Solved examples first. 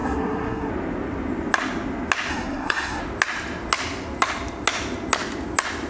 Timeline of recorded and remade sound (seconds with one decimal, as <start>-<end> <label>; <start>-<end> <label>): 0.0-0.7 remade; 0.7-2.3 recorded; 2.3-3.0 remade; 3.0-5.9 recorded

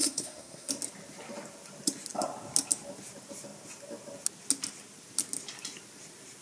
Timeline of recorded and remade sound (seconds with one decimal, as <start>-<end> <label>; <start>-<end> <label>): 0.0-0.7 remade; 0.7-6.4 recorded

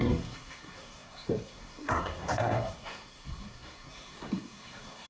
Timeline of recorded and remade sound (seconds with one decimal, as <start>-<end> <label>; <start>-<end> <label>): 0.0-5.1 remade

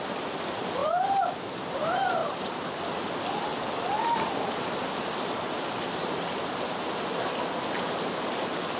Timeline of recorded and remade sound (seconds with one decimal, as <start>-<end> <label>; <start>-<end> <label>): 0.0-0.8 recorded; 0.8-1.4 remade; 1.4-2.2 recorded; 2.2-2.8 remade; 2.8-8.8 recorded

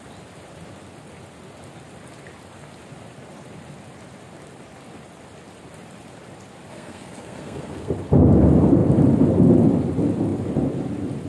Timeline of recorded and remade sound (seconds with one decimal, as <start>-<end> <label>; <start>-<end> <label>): 0.0-6.7 recorded; 6.7-7.9 remade; 7.9-11.3 recorded

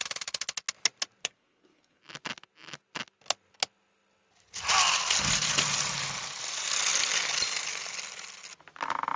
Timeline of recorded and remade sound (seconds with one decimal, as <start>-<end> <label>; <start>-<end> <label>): 0.0-1.2 recorded; 1.2-2.0 remade; 2.0-9.2 recorded